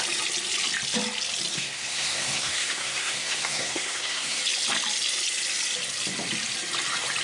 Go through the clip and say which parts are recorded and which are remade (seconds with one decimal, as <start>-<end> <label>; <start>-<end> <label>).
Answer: 0.0-1.5 recorded; 1.5-4.4 remade; 4.4-7.2 recorded